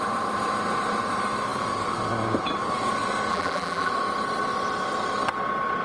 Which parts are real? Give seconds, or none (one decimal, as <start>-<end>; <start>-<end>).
0.0-3.3; 3.9-5.8